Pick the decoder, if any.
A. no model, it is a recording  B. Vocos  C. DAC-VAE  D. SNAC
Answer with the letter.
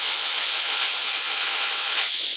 B